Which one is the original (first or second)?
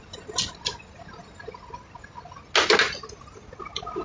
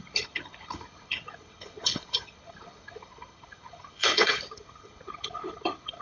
first